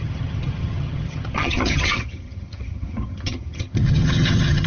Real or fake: fake